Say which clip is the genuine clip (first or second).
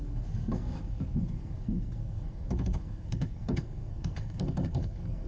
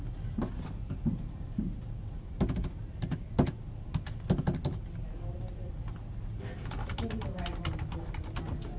second